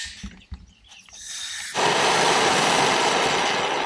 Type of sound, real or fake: real